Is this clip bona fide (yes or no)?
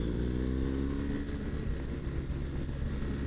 yes